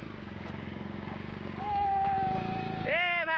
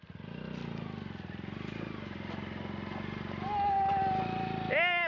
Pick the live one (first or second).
second